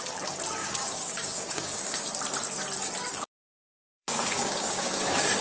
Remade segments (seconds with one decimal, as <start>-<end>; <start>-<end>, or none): 0.6-2.1; 3.1-5.4